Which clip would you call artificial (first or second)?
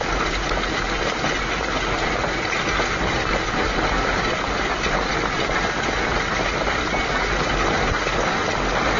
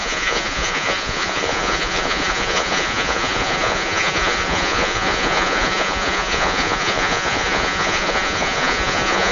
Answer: second